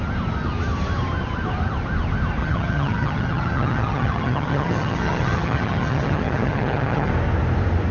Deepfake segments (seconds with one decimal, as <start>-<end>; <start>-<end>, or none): 2.4-7.1